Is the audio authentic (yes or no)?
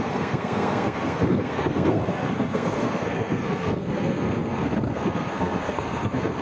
no